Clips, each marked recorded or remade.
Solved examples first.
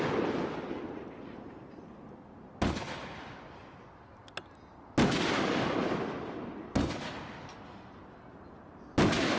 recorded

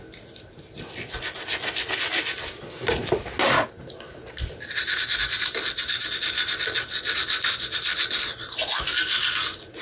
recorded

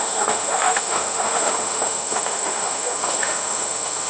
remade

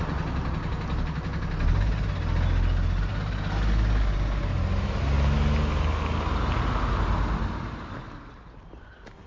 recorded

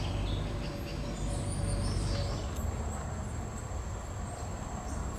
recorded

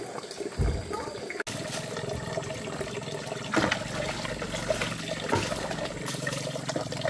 recorded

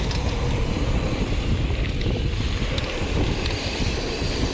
recorded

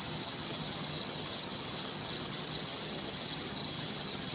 remade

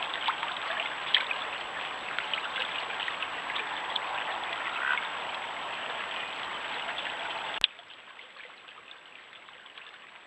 recorded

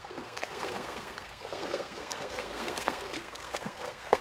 remade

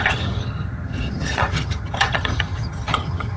remade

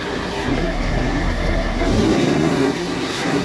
remade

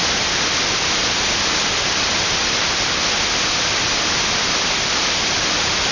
recorded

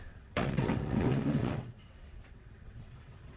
remade